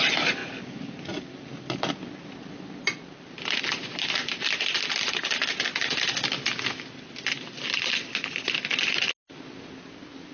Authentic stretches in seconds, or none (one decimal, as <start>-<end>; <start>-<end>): 0.0-10.3